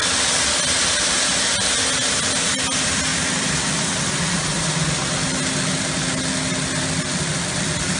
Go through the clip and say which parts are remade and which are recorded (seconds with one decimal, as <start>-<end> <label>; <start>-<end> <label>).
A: 0.0-8.0 recorded